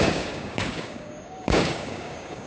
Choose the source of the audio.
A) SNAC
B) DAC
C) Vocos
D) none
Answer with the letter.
B